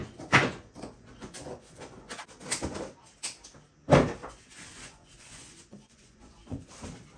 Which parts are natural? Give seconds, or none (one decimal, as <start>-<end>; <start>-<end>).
2.2-4.2; 6.7-7.2